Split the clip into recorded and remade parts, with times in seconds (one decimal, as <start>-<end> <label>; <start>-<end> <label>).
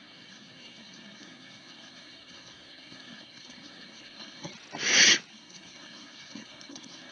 0.0-4.5 remade; 4.5-5.3 recorded; 5.3-7.1 remade